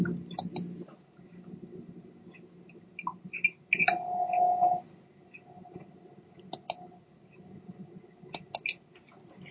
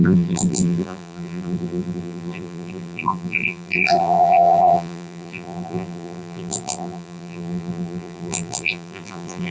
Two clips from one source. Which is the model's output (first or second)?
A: second